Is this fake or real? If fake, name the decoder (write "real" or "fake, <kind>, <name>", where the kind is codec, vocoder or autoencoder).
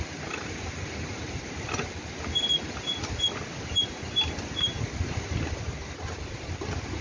real